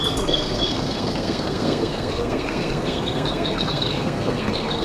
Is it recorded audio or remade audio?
remade